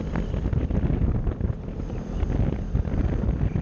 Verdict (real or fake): real